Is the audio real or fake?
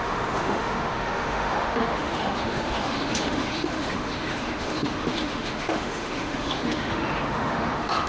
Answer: fake